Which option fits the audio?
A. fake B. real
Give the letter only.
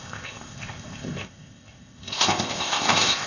A